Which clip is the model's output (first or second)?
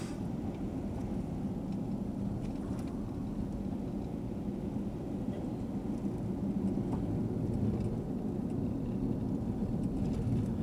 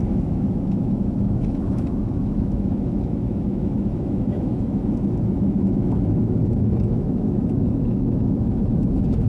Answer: second